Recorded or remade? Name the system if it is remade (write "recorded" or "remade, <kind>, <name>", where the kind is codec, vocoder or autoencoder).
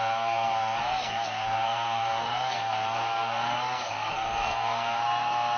remade, codec, SNAC